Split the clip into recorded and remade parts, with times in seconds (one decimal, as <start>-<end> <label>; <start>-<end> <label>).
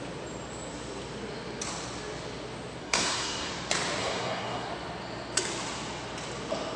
0.0-2.8 recorded; 2.8-3.5 remade; 3.5-4.0 recorded; 4.0-4.7 remade; 4.7-6.8 recorded